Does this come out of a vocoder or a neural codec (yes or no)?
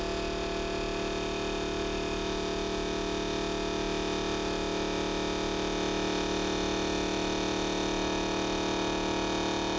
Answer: no